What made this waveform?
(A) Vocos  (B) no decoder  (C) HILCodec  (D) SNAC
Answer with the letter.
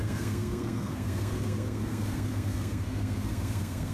D